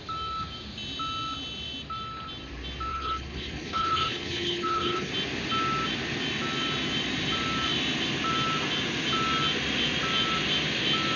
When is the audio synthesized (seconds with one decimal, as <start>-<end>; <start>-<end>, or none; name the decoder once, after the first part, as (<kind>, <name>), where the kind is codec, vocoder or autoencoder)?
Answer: 2.9-5.1 (codec, HILCodec)